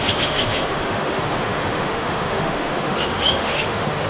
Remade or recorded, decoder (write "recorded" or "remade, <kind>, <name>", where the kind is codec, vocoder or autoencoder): remade, autoencoder, DAC-VAE